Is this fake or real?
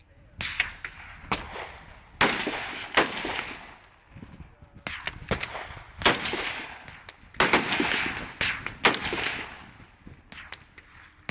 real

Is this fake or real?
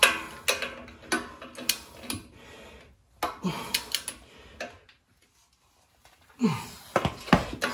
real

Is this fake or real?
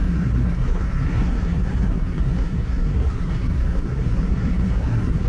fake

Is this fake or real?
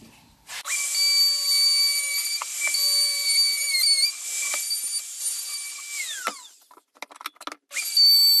real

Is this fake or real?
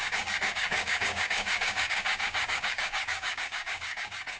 fake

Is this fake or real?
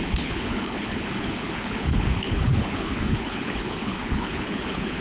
fake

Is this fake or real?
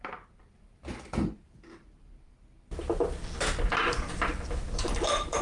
real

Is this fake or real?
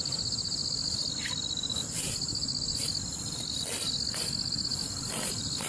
real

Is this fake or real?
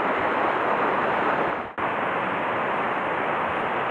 real